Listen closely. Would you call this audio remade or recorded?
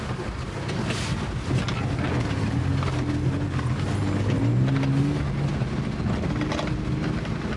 recorded